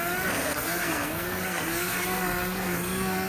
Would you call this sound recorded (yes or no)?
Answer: no